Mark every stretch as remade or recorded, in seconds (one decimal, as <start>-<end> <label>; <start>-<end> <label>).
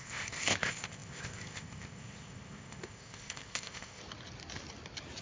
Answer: 0.0-4.0 remade; 4.0-5.2 recorded